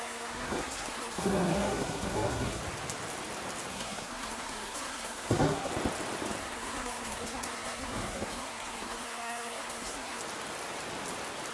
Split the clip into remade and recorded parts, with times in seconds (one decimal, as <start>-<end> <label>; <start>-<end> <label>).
0.0-2.6 remade; 2.6-3.7 recorded; 3.7-5.7 remade; 5.7-6.4 recorded; 6.4-10.2 remade; 10.2-11.5 recorded